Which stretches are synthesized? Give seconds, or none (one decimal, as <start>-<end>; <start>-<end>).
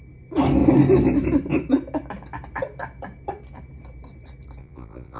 4.6-5.2